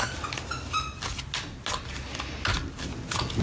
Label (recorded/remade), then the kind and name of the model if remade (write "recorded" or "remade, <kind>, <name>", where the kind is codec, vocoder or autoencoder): recorded